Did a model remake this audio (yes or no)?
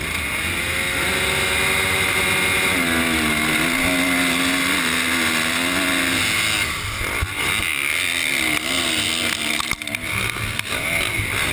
no